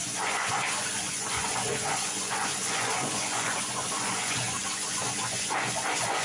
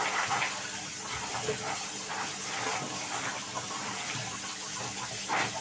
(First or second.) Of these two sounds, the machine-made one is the first